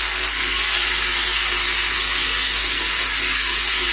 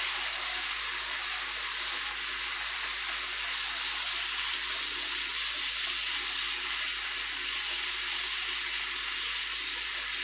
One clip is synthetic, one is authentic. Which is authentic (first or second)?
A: second